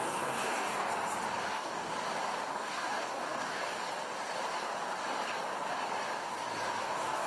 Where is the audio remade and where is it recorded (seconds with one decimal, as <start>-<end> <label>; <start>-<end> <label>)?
0.0-0.9 remade; 0.9-1.5 recorded; 1.5-1.9 remade; 1.9-2.5 recorded; 2.5-3.8 remade; 3.8-6.8 recorded; 6.8-7.3 remade